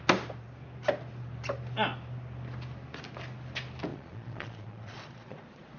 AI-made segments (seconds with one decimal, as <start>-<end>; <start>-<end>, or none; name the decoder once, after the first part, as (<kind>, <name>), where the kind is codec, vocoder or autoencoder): 3.9-5.8 (vocoder, Vocos)